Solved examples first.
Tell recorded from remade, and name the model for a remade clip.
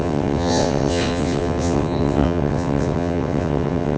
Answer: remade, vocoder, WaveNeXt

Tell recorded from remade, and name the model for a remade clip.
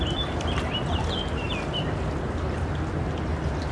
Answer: recorded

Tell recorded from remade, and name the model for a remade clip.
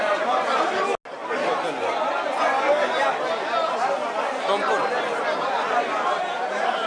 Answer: recorded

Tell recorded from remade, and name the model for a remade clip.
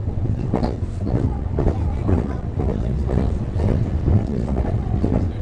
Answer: remade, vocoder, WaveNeXt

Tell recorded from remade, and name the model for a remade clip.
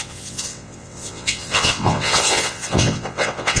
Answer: remade, vocoder, WaveNeXt